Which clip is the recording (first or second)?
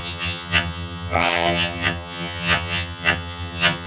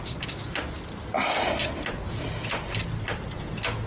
second